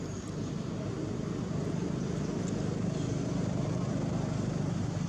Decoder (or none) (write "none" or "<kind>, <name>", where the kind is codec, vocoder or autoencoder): none